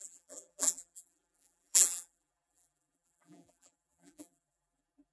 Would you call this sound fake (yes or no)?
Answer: yes